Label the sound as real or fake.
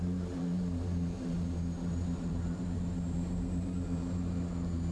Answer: fake